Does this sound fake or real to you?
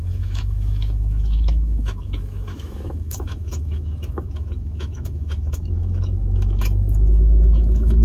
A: fake